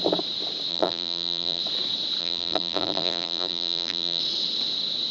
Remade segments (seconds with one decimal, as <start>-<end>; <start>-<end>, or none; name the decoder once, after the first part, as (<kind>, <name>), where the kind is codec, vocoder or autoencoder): 0.7-1.6 (vocoder, BigVGAN v2); 2.2-4.2